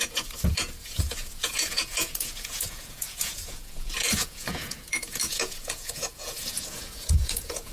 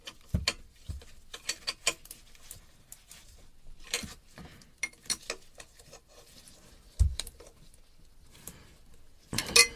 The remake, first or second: first